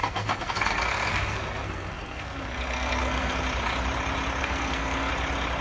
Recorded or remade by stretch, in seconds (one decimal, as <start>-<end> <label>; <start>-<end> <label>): 0.0-3.4 remade; 3.4-4.4 recorded; 4.4-5.1 remade; 5.1-5.6 recorded